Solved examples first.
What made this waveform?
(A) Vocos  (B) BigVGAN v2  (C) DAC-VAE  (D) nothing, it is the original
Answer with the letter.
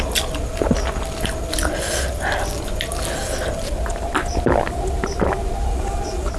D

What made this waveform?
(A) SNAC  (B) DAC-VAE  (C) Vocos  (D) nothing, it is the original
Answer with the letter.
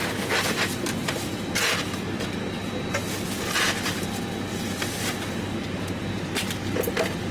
D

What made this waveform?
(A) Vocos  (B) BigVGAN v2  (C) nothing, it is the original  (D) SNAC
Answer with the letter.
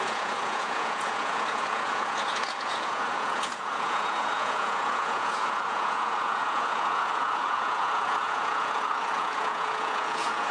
A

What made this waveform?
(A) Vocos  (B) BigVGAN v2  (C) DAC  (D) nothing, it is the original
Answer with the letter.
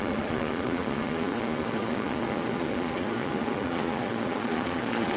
A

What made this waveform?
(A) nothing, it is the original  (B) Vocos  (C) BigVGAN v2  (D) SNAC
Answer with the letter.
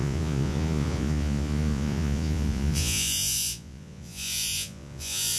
B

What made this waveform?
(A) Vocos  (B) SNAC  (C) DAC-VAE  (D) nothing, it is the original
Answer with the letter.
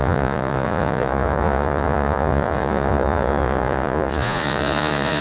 A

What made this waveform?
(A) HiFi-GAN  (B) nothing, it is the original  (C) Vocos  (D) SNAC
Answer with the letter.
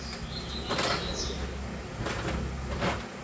B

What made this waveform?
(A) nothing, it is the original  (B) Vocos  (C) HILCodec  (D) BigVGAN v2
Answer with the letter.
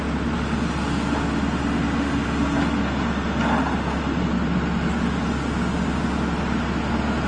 A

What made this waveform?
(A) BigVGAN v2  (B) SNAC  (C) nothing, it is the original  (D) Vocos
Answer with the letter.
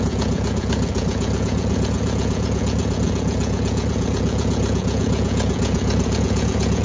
D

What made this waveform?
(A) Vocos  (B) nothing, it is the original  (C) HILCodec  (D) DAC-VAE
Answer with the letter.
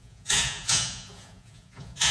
A